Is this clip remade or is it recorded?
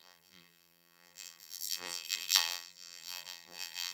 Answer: remade